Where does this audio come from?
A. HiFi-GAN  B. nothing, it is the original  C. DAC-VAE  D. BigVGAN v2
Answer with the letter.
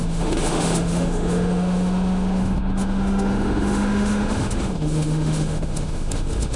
C